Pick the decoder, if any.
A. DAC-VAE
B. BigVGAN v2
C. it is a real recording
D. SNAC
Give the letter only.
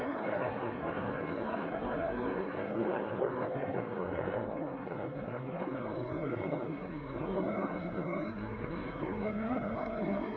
D